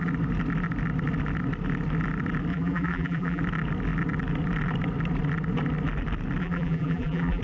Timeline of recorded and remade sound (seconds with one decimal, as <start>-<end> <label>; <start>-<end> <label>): 0.0-2.5 recorded; 2.5-3.4 remade; 3.4-6.4 recorded; 6.4-7.4 remade